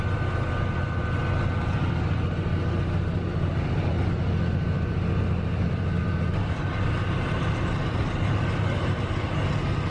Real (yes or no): yes